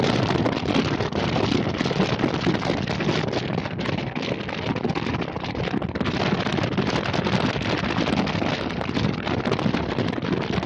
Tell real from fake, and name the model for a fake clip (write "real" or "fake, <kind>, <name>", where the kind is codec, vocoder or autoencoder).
real